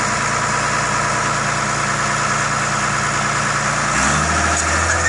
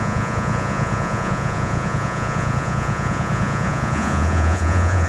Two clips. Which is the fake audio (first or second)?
second